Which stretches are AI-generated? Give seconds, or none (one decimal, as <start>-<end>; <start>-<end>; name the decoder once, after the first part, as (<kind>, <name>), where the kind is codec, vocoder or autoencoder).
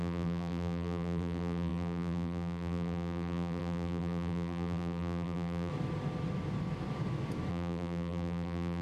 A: 0.0-5.7 (vocoder, BigVGAN v2); 7.5-8.8